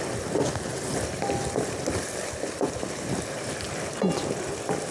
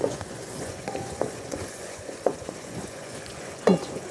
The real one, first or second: first